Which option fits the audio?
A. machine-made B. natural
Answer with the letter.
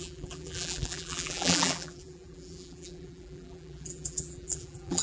A